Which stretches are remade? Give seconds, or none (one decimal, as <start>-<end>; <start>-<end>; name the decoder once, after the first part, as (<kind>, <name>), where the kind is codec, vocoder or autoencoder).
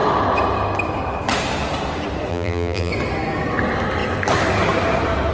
2.3-2.9 (vocoder, BigVGAN v2)